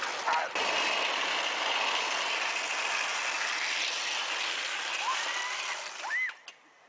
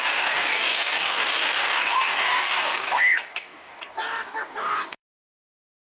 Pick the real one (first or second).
first